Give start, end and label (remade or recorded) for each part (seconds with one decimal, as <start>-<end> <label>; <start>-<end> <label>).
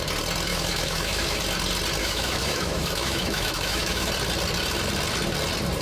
0.0-0.5 recorded; 0.5-1.4 remade; 1.4-2.0 recorded; 2.0-4.1 remade; 4.1-5.8 recorded